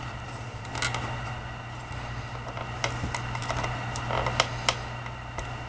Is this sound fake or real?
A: real